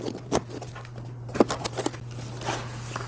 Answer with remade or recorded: recorded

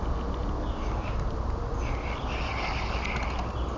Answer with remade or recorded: recorded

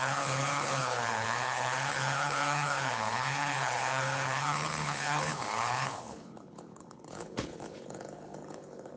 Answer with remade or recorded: remade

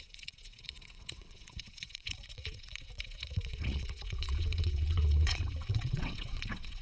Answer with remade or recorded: remade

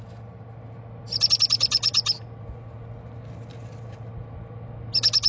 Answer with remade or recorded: recorded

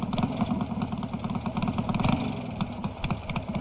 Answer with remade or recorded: recorded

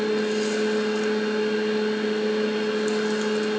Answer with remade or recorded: recorded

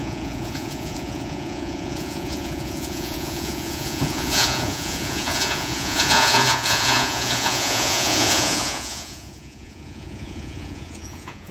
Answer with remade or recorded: remade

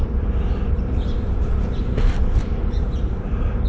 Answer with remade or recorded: remade